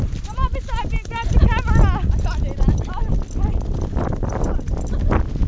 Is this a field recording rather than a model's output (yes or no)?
yes